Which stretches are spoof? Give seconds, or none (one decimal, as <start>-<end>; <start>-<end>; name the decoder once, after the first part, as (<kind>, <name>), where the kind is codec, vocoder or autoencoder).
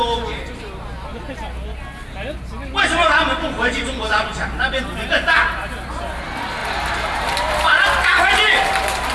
4.1-4.8 (vocoder, BigVGAN v2); 6.6-8.2